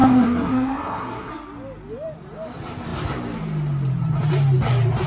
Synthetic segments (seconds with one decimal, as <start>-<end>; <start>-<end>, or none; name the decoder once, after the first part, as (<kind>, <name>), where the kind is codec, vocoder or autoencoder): 0.0-1.3 (codec, SNAC)